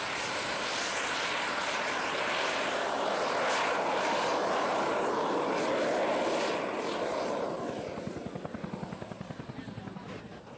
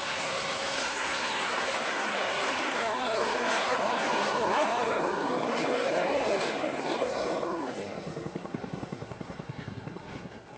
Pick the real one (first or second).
first